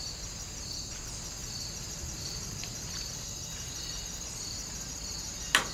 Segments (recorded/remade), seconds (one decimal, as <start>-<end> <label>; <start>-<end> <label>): 0.0-1.4 recorded; 1.4-4.8 remade; 4.8-5.7 recorded

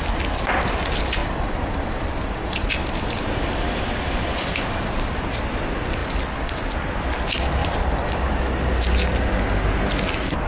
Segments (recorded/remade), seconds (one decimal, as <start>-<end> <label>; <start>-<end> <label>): 0.0-1.2 recorded; 1.2-5.4 remade; 5.4-6.0 recorded; 6.0-6.9 remade; 6.9-7.6 recorded; 7.6-8.3 remade; 8.3-10.5 recorded